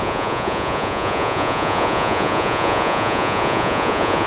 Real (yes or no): no